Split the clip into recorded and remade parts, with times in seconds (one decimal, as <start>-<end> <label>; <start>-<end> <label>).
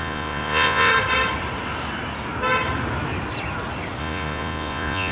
0.0-0.9 remade; 0.9-4.0 recorded; 4.0-5.1 remade